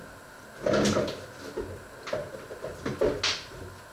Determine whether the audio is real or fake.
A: real